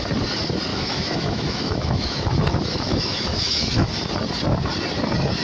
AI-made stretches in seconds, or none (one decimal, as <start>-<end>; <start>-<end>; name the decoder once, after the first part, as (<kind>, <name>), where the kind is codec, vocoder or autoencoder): 0.7-3.9 (autoencoder, DAC-VAE)